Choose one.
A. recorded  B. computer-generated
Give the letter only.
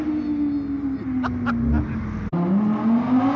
A